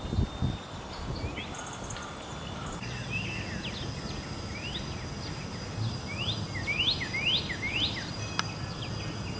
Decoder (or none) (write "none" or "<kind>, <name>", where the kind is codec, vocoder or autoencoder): none